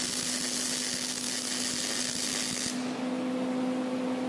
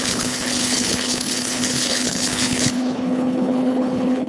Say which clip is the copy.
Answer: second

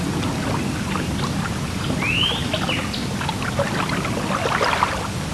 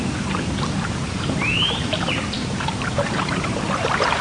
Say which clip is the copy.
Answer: second